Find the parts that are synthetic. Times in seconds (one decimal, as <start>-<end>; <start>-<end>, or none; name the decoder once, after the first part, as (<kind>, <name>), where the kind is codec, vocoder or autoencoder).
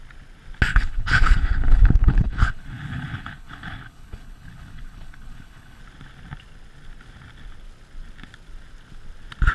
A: 0.7-5.8 (codec, HILCodec)